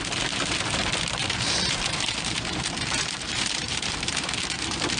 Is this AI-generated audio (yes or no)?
yes